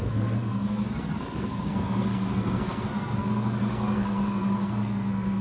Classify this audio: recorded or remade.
remade